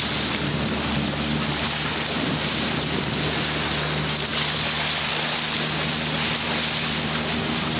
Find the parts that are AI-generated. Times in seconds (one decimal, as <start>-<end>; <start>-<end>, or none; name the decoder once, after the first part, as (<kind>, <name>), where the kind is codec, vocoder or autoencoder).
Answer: none

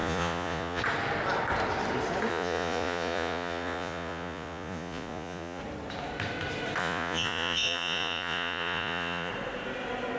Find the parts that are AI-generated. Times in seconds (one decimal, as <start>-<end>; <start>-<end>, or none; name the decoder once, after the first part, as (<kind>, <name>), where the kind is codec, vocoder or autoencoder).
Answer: 0.0-0.8 (vocoder, Vocos); 2.3-5.6; 6.8-9.3

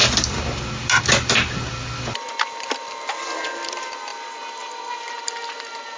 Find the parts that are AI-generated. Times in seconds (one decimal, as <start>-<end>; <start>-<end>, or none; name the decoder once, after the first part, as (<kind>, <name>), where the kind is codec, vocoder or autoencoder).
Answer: none

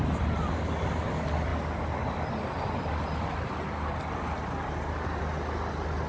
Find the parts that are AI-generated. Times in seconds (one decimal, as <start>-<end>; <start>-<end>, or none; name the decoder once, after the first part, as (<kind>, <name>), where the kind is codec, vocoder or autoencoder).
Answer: none

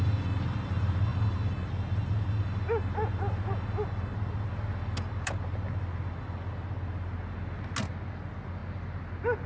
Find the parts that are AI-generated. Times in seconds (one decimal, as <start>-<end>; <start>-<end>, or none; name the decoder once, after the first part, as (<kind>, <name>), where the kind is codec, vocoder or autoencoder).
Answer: none

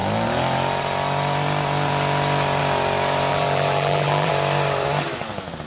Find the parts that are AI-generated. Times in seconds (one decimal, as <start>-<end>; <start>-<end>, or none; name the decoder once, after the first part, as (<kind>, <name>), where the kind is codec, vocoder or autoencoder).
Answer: 3.3-4.3 (vocoder, BigVGAN v2)